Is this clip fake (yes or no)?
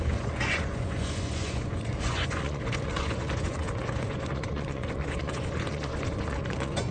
yes